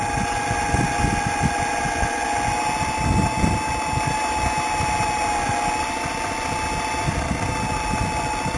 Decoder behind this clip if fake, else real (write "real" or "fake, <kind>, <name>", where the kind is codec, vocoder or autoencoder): real